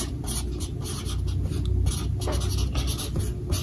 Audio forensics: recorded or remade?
recorded